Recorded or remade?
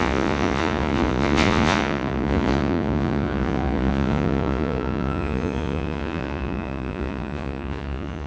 remade